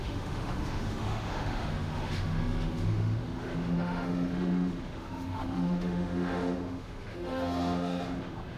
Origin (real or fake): fake